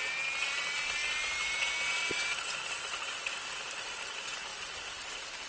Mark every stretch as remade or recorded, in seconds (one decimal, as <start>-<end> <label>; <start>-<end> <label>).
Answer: 0.0-5.5 recorded